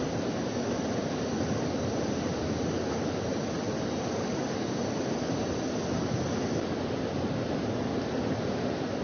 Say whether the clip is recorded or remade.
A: recorded